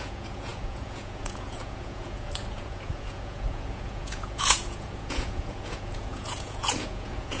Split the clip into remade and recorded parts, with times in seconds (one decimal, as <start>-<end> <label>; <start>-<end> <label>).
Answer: 0.0-7.4 remade